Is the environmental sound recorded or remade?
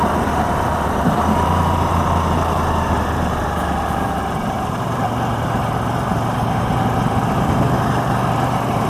remade